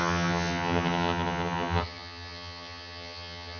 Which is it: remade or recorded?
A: remade